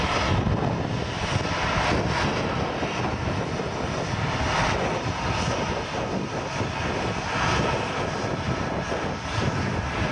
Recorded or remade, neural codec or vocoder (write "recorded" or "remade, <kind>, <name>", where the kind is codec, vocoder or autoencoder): recorded